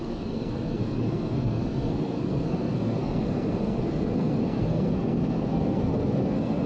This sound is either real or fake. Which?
fake